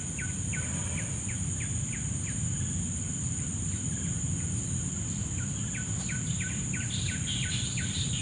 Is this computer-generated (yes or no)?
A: no